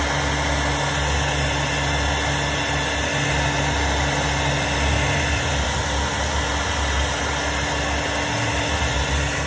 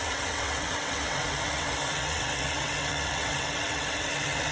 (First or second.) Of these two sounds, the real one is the first